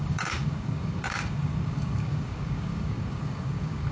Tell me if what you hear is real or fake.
fake